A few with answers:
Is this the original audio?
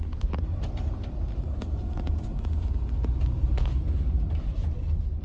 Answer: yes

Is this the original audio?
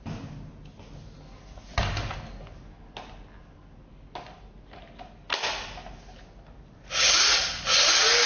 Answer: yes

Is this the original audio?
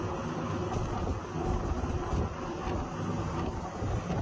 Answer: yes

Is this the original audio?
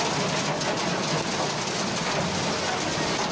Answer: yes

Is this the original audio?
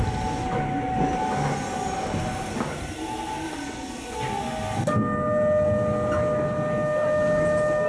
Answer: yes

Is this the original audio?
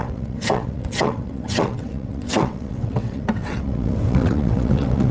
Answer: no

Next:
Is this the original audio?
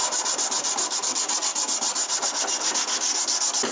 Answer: yes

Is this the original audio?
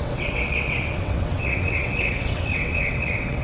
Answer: no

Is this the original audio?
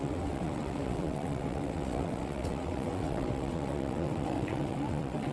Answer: no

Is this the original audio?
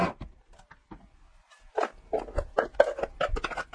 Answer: yes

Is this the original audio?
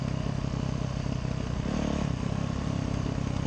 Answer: yes